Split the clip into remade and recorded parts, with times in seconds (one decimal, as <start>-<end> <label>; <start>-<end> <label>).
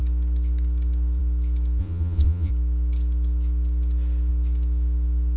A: 0.0-1.8 recorded; 1.8-2.5 remade; 2.5-5.4 recorded